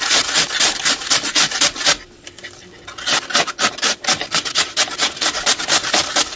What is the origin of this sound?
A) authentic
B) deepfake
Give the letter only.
A